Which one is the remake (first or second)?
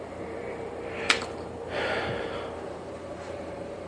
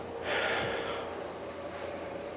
first